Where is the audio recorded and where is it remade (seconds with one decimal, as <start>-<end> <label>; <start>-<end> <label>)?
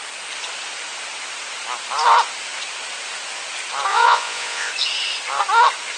0.0-3.9 recorded; 3.9-4.7 remade; 4.7-6.0 recorded